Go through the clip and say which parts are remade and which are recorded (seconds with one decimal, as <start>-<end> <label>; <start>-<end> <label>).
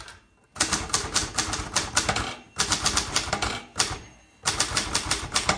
0.0-3.7 recorded; 3.7-5.6 remade